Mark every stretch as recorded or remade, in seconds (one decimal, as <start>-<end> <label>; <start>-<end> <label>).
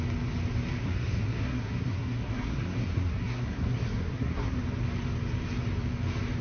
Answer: 0.0-0.8 recorded; 0.8-4.6 remade; 4.6-6.4 recorded